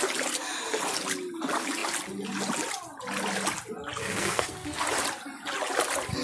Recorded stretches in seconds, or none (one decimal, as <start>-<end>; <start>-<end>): 0.0-4.0; 4.8-6.2

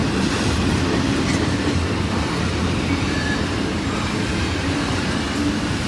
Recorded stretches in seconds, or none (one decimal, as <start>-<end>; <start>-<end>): 0.0-5.9

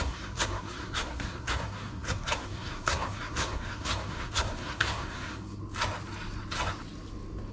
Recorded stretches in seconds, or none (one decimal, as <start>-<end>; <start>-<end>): 5.6-7.5